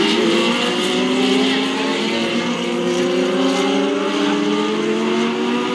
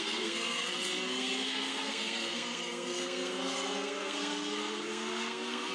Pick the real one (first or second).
first